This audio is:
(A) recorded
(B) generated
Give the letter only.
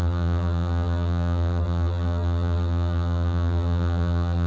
B